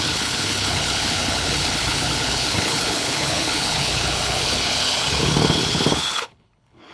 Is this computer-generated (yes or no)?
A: yes